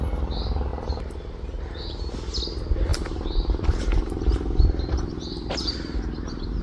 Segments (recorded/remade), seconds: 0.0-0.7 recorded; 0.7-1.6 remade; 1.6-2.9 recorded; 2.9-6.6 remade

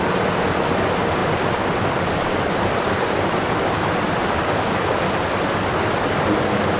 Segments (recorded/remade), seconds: 0.0-1.2 recorded; 1.2-5.3 remade; 5.3-6.8 recorded

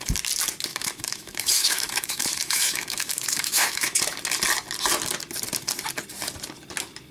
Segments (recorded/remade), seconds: 0.0-0.7 recorded; 0.7-4.0 remade; 4.0-7.1 recorded

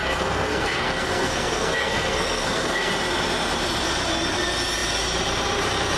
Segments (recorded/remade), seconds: 0.0-2.9 remade; 2.9-6.0 recorded

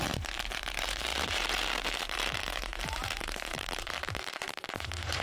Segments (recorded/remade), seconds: 0.0-5.2 remade

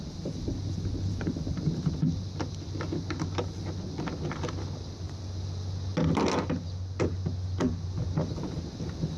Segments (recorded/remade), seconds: 0.0-9.2 recorded